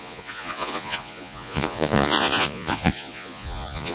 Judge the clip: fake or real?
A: fake